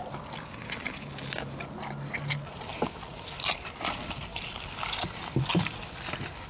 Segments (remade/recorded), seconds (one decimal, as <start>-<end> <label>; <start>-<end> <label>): 0.0-6.5 recorded